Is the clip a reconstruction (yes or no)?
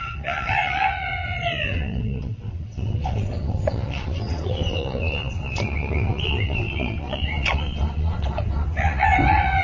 yes